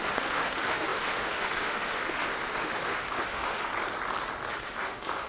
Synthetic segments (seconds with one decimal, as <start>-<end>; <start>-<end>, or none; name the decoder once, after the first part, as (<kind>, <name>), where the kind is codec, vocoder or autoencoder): 0.0-3.7 (autoencoder, DAC-VAE); 4.5-5.3